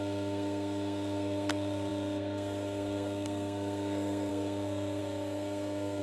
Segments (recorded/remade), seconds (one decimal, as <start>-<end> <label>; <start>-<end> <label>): 0.0-6.0 remade